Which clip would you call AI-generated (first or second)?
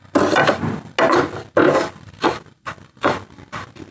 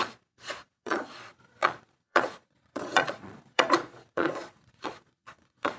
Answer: second